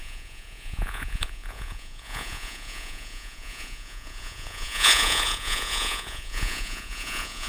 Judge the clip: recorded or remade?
remade